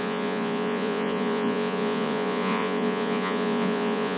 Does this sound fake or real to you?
fake